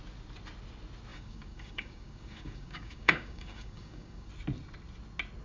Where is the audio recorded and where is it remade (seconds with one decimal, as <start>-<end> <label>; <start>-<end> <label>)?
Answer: 0.0-1.1 recorded; 1.1-4.3 remade; 4.3-5.4 recorded